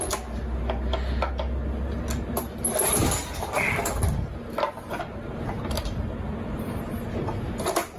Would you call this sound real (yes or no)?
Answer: yes